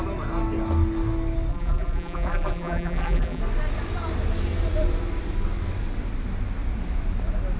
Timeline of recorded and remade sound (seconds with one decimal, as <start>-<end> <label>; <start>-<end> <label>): 0.0-1.5 recorded; 1.5-3.4 remade; 3.4-7.6 recorded